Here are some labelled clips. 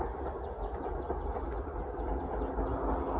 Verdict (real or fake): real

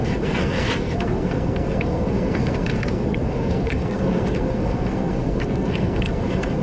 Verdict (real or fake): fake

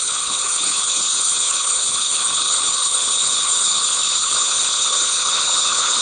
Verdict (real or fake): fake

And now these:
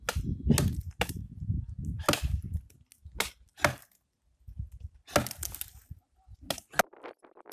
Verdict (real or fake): real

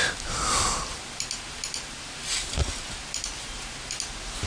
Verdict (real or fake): real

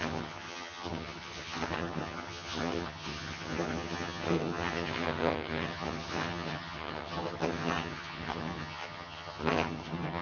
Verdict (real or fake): fake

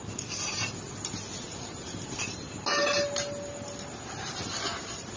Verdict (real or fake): real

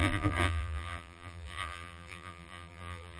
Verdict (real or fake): fake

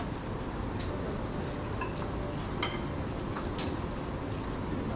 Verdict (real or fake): real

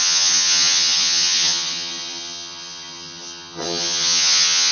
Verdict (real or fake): fake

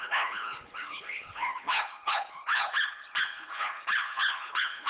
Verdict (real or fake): fake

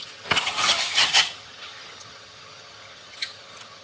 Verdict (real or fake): fake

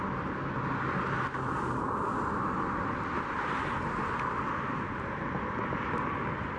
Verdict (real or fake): real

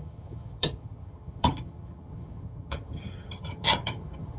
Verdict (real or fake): fake